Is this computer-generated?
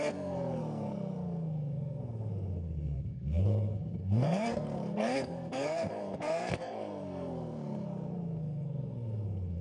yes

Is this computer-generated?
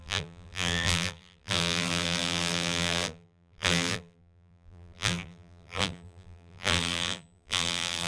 yes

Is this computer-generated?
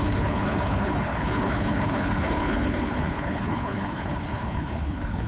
yes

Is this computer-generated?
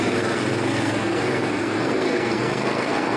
yes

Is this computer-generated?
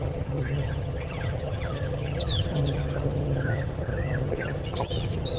yes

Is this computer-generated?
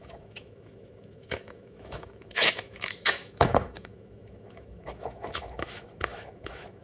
yes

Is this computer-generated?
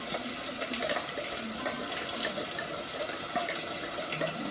no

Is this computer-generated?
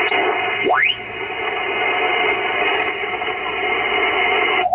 no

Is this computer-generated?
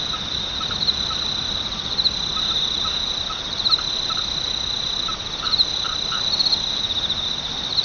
no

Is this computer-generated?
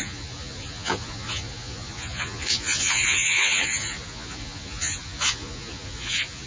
yes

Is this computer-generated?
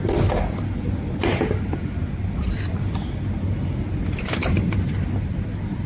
no